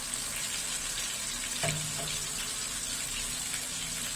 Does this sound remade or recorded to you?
recorded